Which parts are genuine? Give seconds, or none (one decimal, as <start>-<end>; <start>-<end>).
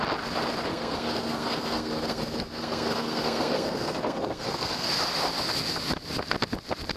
0.0-0.7; 4.9-7.0